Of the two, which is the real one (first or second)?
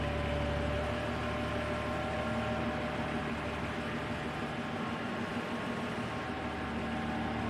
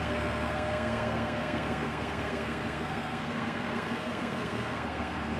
first